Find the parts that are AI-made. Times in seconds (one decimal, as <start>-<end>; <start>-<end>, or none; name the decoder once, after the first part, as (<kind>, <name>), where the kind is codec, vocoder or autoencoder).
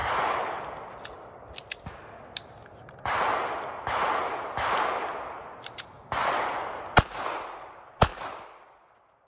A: 0.0-0.6 (vocoder, BigVGAN v2)